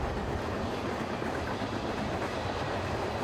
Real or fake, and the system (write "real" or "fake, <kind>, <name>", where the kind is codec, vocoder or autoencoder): real